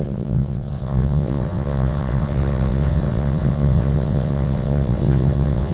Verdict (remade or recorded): remade